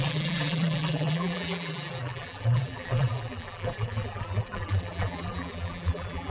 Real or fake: fake